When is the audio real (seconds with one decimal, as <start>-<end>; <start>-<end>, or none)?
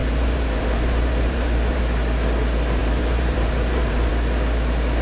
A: 1.8-2.8; 4.1-5.0